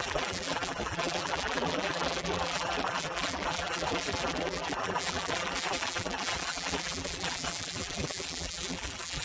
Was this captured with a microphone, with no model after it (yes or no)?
no